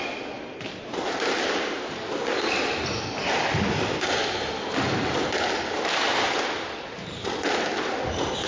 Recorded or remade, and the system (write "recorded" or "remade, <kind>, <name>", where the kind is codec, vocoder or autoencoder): recorded